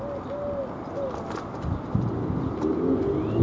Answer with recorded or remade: recorded